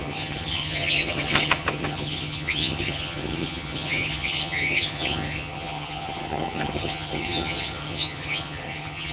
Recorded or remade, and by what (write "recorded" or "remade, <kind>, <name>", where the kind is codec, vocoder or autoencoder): remade, vocoder, HiFi-GAN